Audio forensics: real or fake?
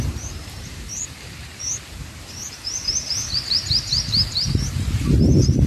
fake